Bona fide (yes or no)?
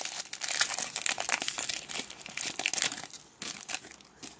yes